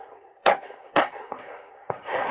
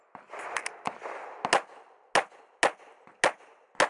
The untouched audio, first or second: second